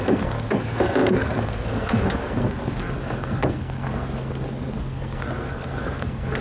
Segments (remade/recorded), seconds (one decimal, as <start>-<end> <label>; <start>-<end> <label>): 0.0-6.4 remade